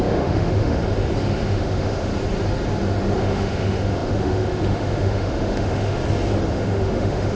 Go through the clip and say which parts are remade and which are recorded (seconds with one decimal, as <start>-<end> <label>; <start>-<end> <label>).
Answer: 0.0-0.8 remade; 0.8-1.4 recorded; 1.4-2.1 remade; 2.1-3.2 recorded; 3.2-6.0 remade; 6.0-6.5 recorded; 6.5-7.4 remade